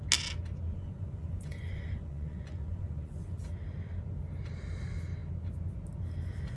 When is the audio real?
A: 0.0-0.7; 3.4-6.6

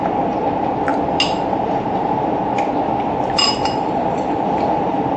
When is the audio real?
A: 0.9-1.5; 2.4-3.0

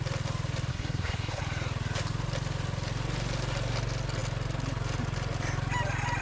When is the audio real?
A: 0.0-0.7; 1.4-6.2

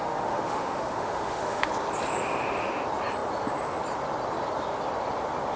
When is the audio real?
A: 1.7-5.6

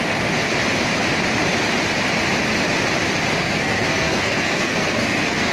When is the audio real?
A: 0.0-3.4

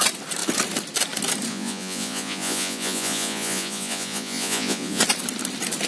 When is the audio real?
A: 0.0-1.5; 5.0-5.9

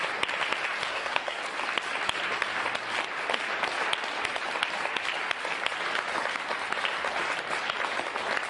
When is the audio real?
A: 0.0-0.9; 1.4-8.5